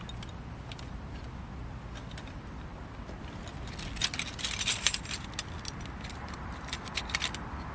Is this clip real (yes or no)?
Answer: yes